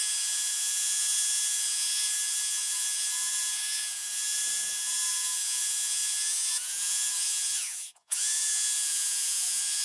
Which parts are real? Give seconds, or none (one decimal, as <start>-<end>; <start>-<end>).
none